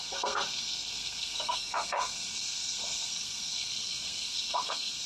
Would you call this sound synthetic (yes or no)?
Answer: yes